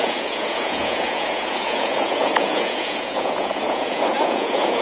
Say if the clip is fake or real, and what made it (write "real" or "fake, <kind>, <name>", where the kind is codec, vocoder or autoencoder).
fake, vocoder, Vocos